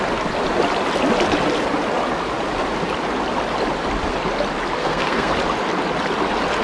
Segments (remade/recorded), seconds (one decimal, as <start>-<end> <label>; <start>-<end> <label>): 0.0-4.8 recorded; 4.8-5.3 remade; 5.3-6.6 recorded